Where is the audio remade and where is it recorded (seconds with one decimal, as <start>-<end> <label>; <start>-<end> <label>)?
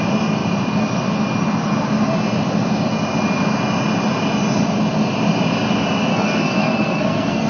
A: 0.0-6.1 recorded; 6.1-7.5 remade